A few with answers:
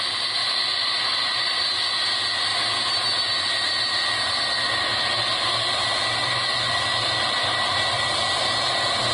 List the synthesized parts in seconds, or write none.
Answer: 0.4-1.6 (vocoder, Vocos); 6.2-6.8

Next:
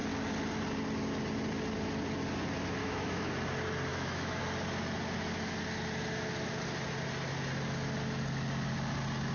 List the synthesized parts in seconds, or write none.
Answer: 2.8-3.3 (autoencoder, DAC-VAE); 3.9-4.4

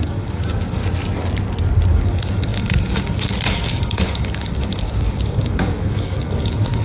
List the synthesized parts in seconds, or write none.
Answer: 0.0-0.8 (codec, DAC); 1.9-6.8

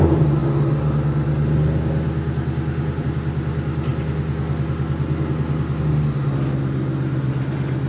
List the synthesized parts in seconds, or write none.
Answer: none

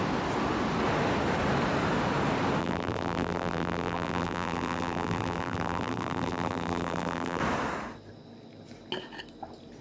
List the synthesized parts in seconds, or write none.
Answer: 2.6-7.4 (vocoder, BigVGAN v2)

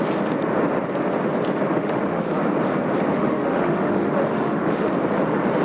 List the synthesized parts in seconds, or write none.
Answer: 1.8-2.4 (autoencoder, DAC-VAE); 3.1-4.9